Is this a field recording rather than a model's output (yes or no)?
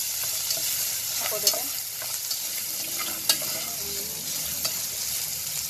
yes